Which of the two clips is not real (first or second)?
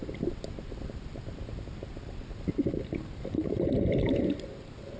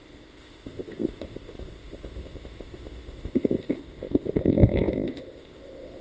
second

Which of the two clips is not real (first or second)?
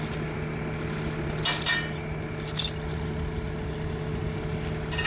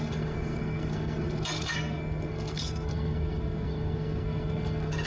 second